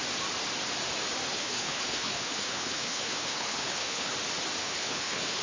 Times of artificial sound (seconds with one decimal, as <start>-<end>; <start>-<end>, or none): 1.3-4.1; 4.6-5.4